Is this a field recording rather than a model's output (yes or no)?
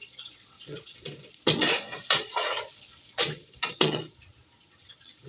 no